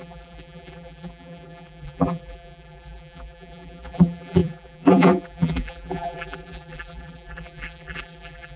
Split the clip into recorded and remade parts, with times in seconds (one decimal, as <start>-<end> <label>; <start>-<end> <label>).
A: 0.0-8.6 remade